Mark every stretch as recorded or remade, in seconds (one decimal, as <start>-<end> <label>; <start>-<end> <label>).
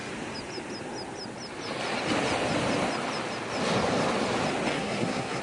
0.0-4.7 recorded; 4.7-5.4 remade